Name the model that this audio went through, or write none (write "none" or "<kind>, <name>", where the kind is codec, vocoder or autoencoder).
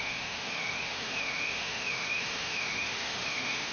autoencoder, DAC-VAE